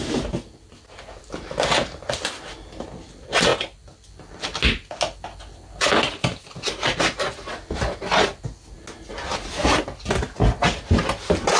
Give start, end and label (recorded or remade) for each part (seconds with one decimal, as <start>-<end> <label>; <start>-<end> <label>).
0.0-11.6 recorded